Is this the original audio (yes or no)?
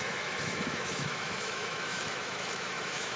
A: no